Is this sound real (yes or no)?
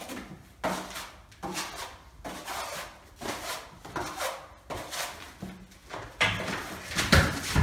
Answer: yes